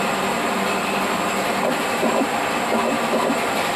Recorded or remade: recorded